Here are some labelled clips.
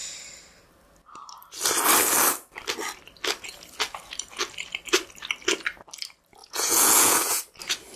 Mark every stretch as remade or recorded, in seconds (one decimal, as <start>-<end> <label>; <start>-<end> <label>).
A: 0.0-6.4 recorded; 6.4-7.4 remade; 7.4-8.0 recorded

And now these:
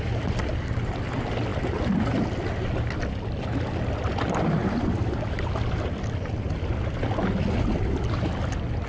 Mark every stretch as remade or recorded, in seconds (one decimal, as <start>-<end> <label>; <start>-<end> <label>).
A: 0.0-8.9 recorded

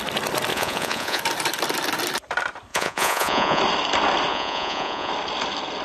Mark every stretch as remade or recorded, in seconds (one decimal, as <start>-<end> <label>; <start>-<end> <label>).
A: 0.0-0.5 recorded; 0.5-1.2 remade; 1.2-2.7 recorded; 2.7-3.6 remade; 3.6-4.3 recorded; 4.3-5.1 remade; 5.1-5.8 recorded

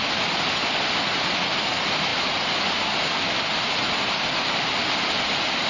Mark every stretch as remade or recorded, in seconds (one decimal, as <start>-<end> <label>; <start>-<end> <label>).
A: 0.0-5.7 recorded

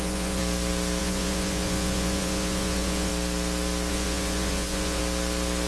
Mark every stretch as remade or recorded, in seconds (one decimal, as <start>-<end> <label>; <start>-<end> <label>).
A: 0.0-0.4 remade; 0.4-1.0 recorded; 1.0-3.1 remade; 3.1-3.9 recorded; 3.9-5.0 remade; 5.0-5.7 recorded